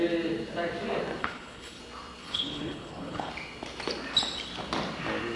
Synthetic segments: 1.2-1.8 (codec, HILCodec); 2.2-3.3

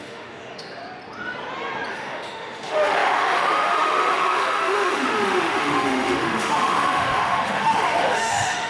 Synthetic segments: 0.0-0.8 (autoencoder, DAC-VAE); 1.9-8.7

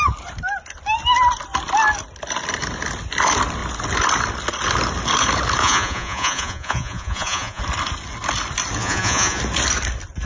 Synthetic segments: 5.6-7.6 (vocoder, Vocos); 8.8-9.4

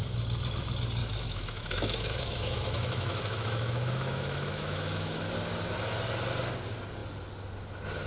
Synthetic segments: 1.0-5.3 (autoencoder, DAC-VAE)

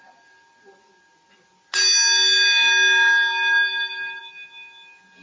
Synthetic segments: none

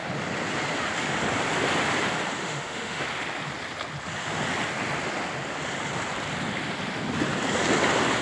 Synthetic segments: 2.4-3.0 (autoencoder, DAC-VAE)

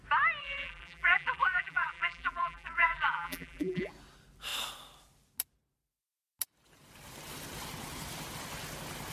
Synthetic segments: 0.4-3.9 (vocoder, BigVGAN v2)

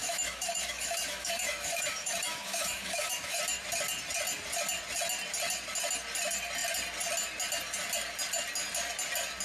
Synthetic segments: 0.0-3.4 (autoencoder, DAC-VAE)